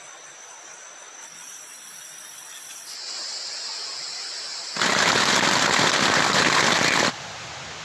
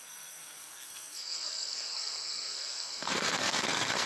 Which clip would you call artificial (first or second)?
second